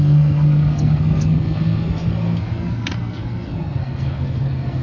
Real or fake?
fake